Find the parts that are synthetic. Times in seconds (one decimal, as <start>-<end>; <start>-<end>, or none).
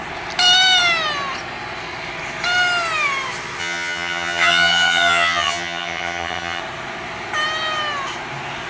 3.6-6.6